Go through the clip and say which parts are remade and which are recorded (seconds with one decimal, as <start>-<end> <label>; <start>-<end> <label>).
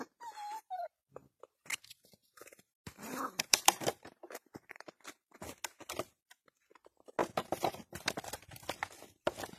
0.0-2.2 recorded; 2.2-4.9 remade; 4.9-7.2 recorded; 7.2-7.9 remade; 7.9-9.6 recorded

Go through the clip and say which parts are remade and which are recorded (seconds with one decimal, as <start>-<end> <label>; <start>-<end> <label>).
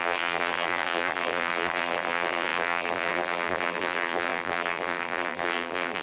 0.0-6.0 remade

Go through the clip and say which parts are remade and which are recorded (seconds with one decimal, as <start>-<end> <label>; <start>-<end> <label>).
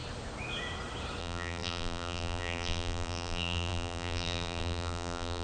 0.0-1.2 recorded; 1.2-5.4 remade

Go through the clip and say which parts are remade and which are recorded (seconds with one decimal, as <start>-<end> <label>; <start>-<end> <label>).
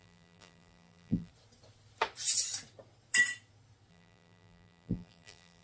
0.0-1.3 remade; 1.3-3.9 recorded; 3.9-5.6 remade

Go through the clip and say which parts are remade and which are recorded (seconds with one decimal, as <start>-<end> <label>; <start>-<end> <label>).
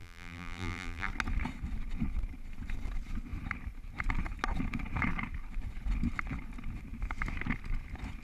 0.0-1.1 remade; 1.1-8.2 recorded